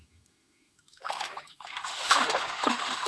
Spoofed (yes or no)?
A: yes